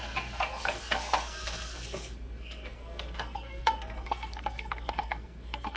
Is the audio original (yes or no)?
no